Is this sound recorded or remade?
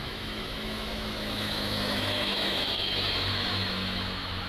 remade